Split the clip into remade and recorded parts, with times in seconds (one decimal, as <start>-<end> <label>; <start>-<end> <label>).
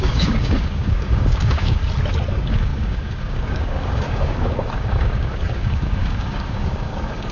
0.0-1.8 remade; 1.8-2.3 recorded; 2.3-7.3 remade